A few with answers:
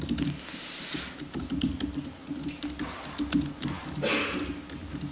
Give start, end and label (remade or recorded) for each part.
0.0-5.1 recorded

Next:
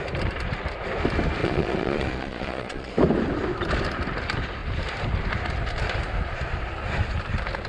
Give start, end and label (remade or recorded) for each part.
0.0-1.4 recorded; 1.4-2.9 remade; 2.9-7.7 recorded

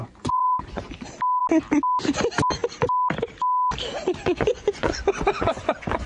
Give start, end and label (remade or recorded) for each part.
0.0-0.9 remade; 0.9-4.2 recorded; 4.2-6.1 remade

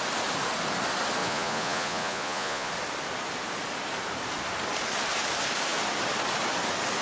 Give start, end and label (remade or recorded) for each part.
0.0-1.2 recorded; 1.2-2.7 remade; 2.7-7.0 recorded

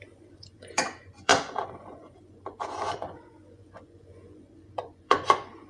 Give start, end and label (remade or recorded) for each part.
0.0-5.7 remade

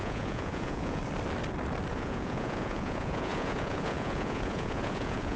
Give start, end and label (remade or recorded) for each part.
0.0-1.0 remade; 1.0-1.9 recorded; 1.9-5.4 remade